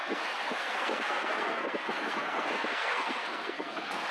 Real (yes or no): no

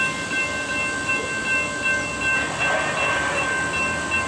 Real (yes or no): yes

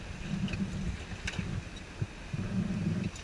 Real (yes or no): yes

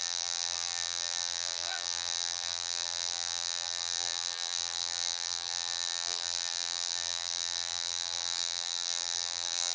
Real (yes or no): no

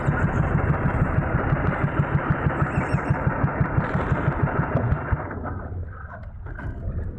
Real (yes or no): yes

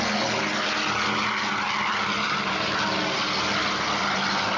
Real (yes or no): yes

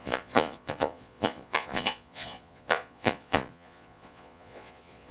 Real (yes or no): no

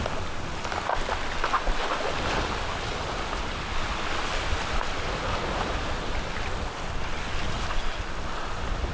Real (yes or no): yes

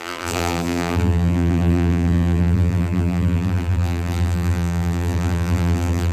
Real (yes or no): no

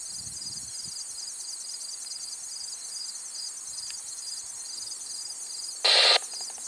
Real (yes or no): yes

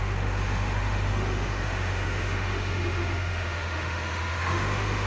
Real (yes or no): no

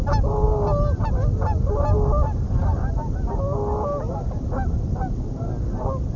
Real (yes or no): yes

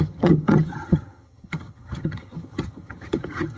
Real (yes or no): no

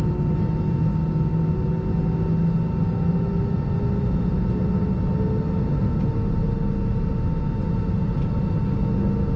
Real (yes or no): yes